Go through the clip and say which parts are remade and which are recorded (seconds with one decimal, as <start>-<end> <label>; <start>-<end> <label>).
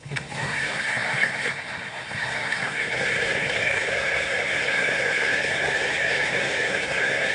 0.0-7.3 remade